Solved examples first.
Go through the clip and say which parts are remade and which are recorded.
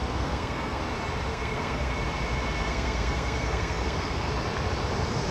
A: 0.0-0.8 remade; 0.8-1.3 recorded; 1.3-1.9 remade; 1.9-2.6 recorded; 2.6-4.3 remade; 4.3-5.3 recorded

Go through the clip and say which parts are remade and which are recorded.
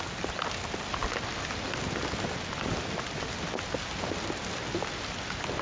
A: 0.0-5.6 recorded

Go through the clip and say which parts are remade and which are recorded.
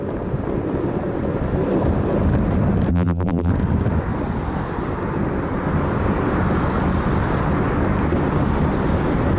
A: 0.0-2.9 recorded; 2.9-3.5 remade; 3.5-9.4 recorded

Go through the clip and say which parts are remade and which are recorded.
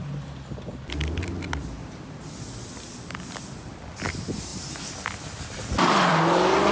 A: 0.0-6.7 recorded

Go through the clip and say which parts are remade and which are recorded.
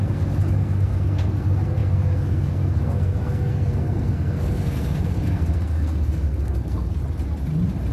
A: 0.0-7.0 remade; 7.0-7.9 recorded